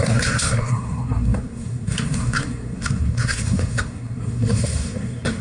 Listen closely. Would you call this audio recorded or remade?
remade